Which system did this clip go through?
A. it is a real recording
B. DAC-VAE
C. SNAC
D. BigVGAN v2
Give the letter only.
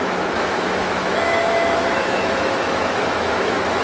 B